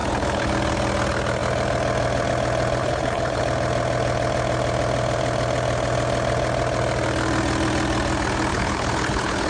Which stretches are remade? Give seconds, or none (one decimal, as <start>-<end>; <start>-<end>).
0.0-0.5; 2.8-3.4; 8.5-9.5